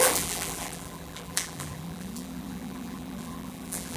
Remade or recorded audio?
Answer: remade